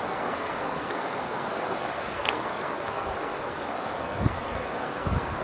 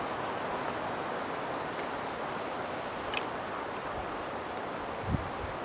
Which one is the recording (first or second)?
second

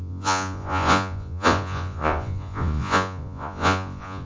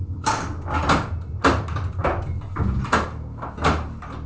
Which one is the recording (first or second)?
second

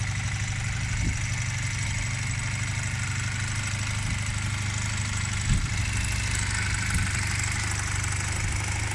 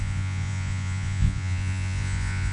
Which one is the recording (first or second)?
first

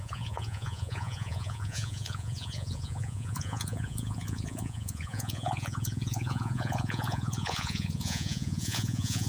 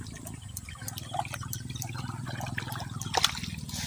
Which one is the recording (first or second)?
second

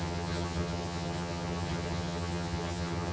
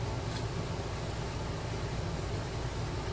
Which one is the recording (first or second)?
second